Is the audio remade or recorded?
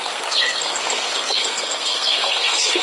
remade